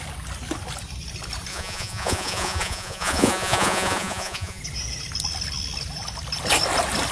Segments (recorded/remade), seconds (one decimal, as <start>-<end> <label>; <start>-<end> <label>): 0.0-1.5 recorded; 1.5-4.6 remade; 4.6-7.1 recorded